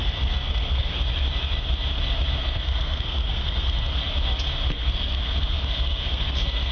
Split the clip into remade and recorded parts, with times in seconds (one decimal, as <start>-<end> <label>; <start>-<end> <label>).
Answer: 0.0-0.9 remade; 0.9-2.4 recorded; 2.4-3.9 remade; 3.9-4.7 recorded; 4.7-6.7 remade